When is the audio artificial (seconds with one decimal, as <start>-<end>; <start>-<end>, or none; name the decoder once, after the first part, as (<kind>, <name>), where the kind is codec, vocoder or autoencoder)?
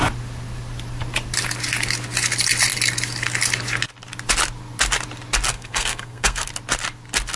5.5-6.5 (codec, SNAC)